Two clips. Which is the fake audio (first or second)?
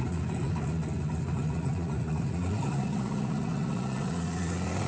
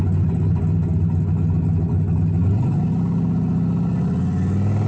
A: first